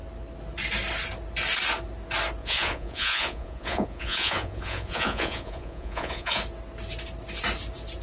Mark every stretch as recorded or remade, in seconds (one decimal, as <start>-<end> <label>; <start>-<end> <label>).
0.0-2.4 recorded; 2.4-6.4 remade; 6.4-8.0 recorded